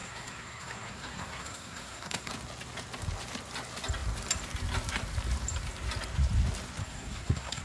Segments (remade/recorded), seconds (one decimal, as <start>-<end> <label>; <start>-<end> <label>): 0.0-2.3 remade; 2.3-6.8 recorded; 6.8-7.6 remade

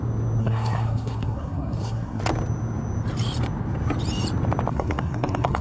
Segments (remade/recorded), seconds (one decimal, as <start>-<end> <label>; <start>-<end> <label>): 0.0-0.4 recorded; 0.4-2.2 remade; 2.2-4.7 recorded; 4.7-5.6 remade

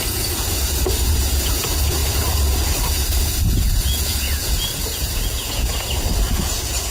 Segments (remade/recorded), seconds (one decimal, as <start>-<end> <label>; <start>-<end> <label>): 0.0-2.0 remade; 2.0-3.5 recorded; 3.5-5.7 remade; 5.7-6.4 recorded; 6.4-6.9 remade